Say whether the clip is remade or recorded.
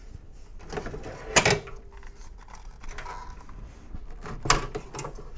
recorded